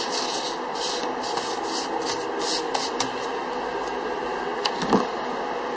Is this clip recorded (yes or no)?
yes